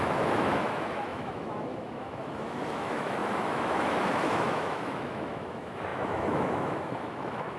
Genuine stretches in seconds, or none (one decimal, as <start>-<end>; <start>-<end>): none